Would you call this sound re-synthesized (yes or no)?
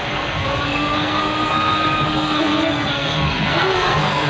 yes